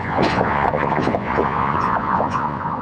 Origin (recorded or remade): remade